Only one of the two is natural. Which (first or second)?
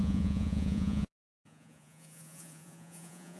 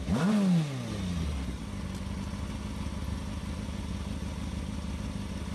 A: second